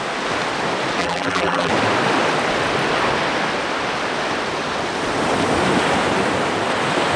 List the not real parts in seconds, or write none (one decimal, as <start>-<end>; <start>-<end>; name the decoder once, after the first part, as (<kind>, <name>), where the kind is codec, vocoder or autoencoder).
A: 1.0-1.7 (vocoder, BigVGAN v2)

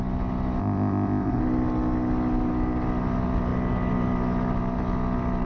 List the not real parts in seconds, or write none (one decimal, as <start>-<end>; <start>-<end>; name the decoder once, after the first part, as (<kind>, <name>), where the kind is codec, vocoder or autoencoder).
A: 0.6-1.4 (codec, ZipCodec)

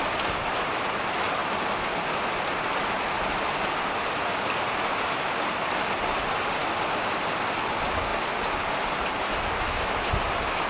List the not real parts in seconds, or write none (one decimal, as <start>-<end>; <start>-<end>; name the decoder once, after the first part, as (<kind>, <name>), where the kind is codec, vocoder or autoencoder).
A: none

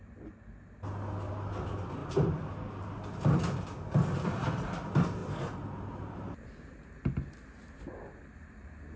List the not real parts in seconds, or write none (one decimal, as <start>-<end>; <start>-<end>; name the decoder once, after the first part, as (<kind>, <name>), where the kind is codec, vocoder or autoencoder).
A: none

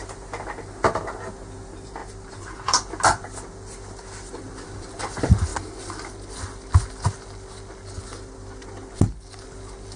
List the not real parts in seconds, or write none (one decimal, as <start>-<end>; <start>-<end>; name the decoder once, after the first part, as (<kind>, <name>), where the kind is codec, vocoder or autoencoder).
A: none

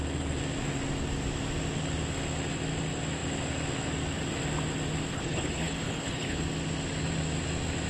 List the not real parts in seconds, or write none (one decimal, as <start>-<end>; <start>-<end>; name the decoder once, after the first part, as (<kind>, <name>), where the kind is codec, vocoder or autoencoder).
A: 5.1-6.4 (codec, HILCodec)

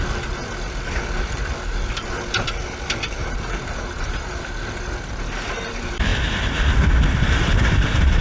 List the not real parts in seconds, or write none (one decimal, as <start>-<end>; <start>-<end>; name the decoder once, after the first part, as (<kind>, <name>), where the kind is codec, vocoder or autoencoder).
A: 3.2-4.2 (vocoder, BigVGAN v2)